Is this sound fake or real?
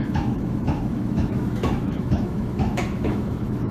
fake